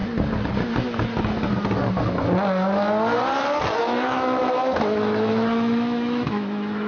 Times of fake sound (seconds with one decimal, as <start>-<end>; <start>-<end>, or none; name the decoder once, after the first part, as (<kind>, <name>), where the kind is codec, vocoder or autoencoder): 3.8-6.9 (autoencoder, DAC-VAE)